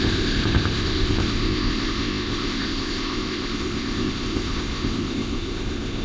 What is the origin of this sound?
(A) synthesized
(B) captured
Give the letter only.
A